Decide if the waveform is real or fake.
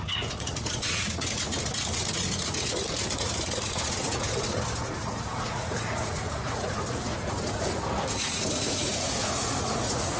fake